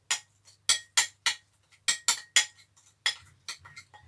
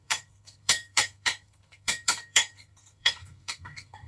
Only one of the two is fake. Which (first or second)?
second